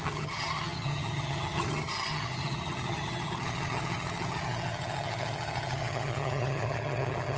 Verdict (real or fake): fake